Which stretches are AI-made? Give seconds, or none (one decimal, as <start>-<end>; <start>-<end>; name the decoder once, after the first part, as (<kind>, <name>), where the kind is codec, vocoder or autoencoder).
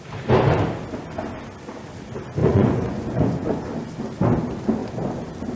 2.4-3.5 (vocoder, Vocos)